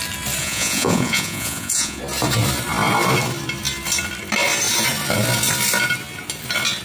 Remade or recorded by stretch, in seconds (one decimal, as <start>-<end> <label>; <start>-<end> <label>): 0.0-0.4 recorded; 0.4-2.0 remade; 2.0-6.8 recorded